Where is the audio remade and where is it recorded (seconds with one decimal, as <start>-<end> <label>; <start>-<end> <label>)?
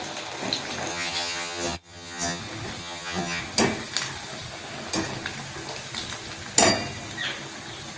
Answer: 0.0-0.9 recorded; 0.9-2.4 remade; 2.4-2.8 recorded; 2.8-3.4 remade; 3.4-8.0 recorded